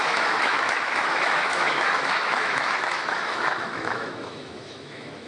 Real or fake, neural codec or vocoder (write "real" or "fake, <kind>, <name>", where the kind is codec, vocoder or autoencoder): fake, autoencoder, DAC-VAE